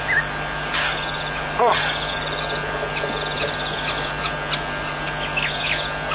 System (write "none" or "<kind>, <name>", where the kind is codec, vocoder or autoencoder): none